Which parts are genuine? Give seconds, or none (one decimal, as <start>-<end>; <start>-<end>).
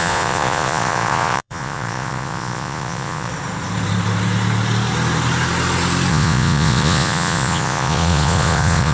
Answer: 3.3-6.1